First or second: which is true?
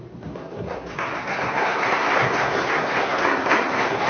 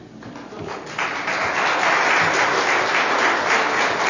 second